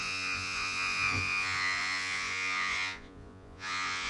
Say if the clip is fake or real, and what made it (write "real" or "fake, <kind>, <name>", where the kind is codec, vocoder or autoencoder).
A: fake, vocoder, Vocos